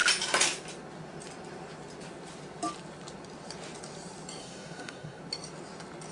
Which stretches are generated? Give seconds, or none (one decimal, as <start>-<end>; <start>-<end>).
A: 4.4-5.2